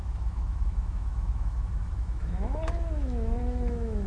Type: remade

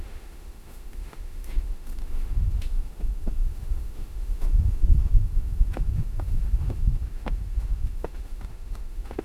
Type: remade